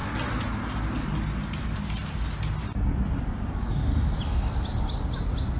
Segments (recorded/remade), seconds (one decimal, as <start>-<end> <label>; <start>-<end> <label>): 0.0-3.3 recorded; 3.3-3.8 remade; 3.8-5.6 recorded